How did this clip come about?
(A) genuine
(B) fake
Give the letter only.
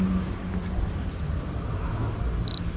A